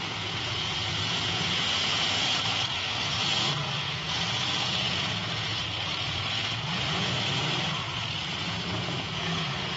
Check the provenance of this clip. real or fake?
fake